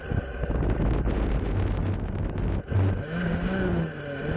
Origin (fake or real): real